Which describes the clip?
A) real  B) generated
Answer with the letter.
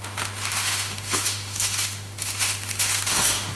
B